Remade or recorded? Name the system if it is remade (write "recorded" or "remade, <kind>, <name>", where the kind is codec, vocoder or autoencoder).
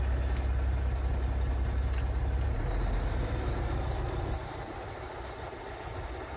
recorded